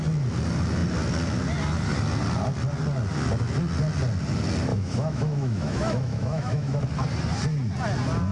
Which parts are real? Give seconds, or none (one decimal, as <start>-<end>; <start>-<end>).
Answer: 0.0-4.7; 6.8-8.3